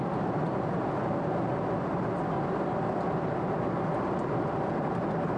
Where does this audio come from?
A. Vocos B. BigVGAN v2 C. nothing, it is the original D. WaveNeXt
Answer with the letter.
B